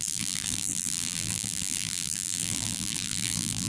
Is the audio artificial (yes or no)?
yes